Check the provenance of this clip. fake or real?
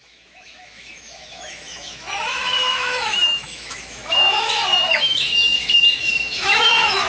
fake